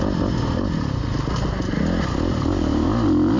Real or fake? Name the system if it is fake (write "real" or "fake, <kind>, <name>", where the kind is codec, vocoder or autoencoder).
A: real